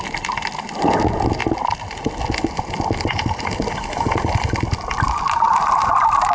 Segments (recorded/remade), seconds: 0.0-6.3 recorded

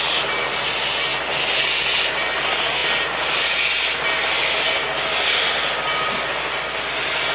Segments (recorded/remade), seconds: 0.0-7.3 recorded

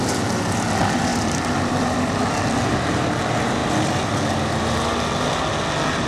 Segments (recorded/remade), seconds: 0.0-1.1 recorded; 1.1-1.8 remade; 1.8-3.6 recorded; 3.6-5.4 remade; 5.4-6.1 recorded

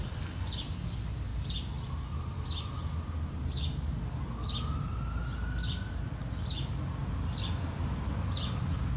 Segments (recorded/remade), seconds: 0.0-9.0 recorded